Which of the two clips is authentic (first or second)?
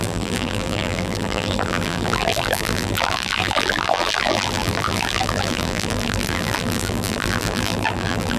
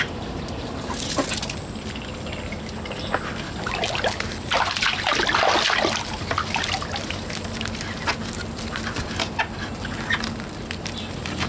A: second